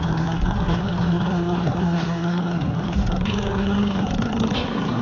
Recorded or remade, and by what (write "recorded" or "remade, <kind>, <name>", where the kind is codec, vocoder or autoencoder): remade, codec, SNAC